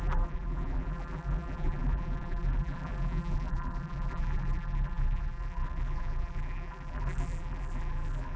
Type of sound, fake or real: fake